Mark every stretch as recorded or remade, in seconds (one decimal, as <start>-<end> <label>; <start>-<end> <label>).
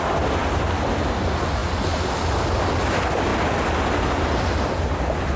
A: 0.0-5.4 recorded